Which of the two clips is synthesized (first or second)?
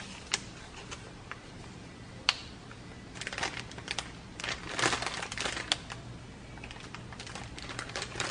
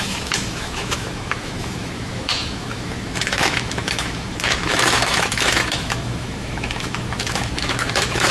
second